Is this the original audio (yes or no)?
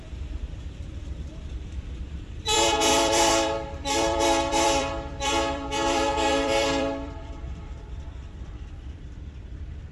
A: no